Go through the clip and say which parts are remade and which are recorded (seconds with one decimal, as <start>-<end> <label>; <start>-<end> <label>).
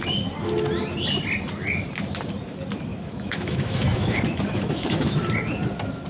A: 0.0-2.9 recorded; 2.9-5.2 remade; 5.2-6.1 recorded